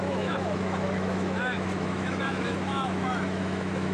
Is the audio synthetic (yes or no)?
yes